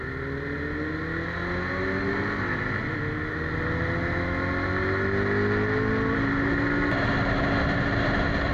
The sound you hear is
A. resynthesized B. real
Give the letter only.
B